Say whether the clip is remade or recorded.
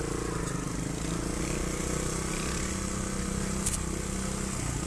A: recorded